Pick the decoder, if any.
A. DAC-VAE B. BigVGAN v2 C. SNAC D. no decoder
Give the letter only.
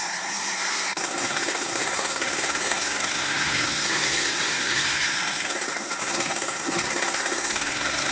C